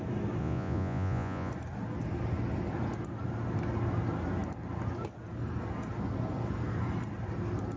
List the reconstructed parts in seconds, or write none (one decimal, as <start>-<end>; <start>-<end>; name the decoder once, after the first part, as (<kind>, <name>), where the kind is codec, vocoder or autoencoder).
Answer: 0.4-1.5 (vocoder, Vocos)